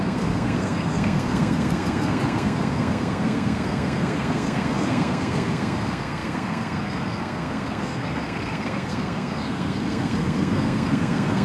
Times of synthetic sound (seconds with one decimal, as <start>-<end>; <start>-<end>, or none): 0.0-11.4